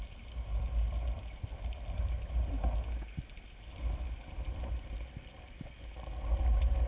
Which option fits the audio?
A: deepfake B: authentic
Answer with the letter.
B